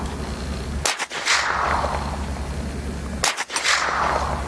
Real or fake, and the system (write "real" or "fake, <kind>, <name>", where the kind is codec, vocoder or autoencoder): real